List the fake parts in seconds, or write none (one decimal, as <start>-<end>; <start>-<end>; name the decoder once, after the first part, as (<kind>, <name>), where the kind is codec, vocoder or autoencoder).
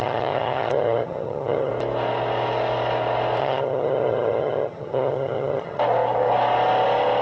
0.0-1.7 (vocoder, HiFi-GAN); 3.4-5.8